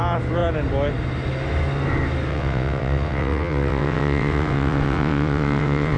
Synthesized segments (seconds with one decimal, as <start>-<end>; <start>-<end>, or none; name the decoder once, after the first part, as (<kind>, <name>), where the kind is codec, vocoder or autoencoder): 2.3-6.0 (vocoder, WaveNeXt)